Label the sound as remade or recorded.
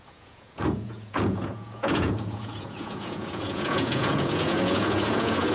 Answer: remade